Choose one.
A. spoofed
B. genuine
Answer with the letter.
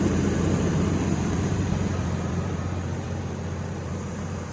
A